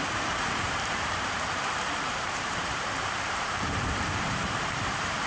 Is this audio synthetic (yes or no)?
yes